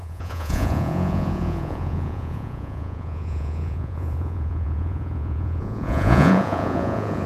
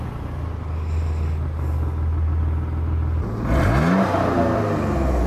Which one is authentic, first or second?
second